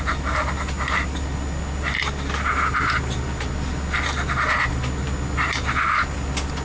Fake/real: real